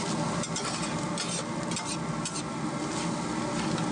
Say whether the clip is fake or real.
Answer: real